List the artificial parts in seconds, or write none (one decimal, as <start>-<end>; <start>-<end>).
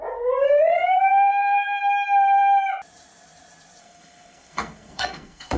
0.8-1.8; 3.8-5.6